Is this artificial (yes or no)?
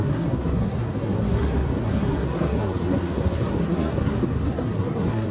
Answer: yes